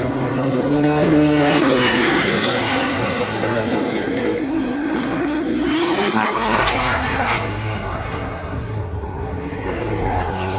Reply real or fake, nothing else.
fake